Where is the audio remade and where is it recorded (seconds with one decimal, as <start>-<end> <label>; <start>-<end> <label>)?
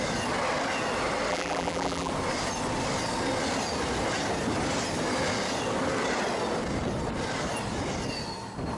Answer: 0.0-1.3 recorded; 1.3-2.1 remade; 2.1-8.8 recorded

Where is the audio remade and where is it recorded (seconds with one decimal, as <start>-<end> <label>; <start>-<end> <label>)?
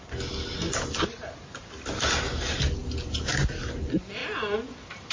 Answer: 0.0-5.1 recorded